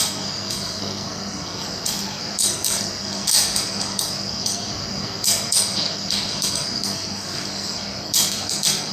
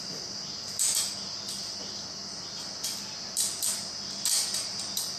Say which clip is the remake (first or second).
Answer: first